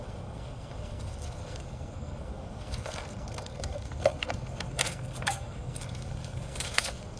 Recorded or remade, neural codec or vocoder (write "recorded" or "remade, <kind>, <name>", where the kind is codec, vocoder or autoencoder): remade, codec, SNAC